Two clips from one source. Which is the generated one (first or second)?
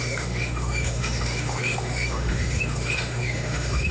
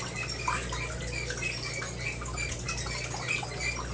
first